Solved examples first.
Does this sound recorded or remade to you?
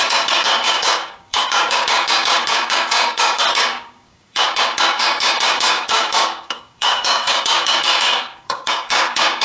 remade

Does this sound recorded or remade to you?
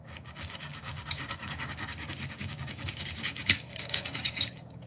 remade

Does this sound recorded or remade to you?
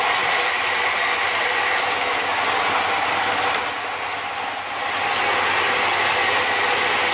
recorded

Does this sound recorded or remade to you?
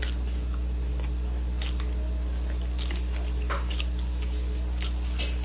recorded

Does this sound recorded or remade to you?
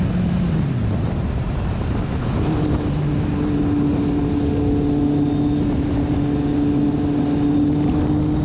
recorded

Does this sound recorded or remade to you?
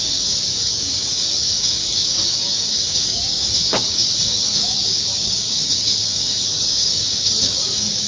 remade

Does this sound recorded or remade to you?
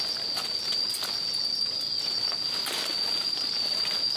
recorded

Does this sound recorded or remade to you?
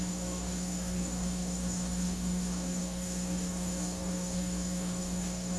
remade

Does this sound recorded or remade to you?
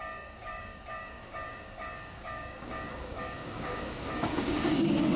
remade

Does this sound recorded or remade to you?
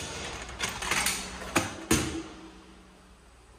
recorded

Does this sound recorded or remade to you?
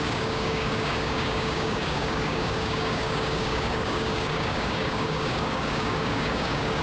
remade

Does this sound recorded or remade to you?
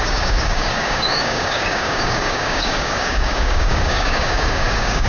remade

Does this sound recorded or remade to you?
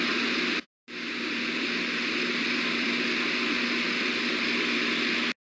recorded